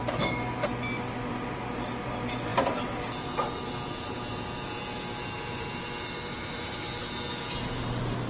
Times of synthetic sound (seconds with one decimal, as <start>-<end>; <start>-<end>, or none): none